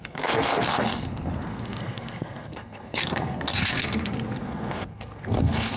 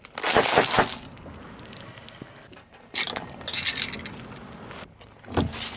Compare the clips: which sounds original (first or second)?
second